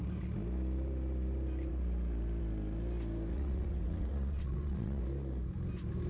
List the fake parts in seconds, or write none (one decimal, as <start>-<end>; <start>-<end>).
3.3-5.0